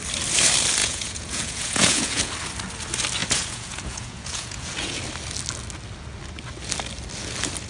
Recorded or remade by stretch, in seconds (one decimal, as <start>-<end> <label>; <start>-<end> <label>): 0.0-0.8 recorded; 0.8-2.3 remade; 2.3-3.2 recorded; 3.2-5.0 remade; 5.0-7.7 recorded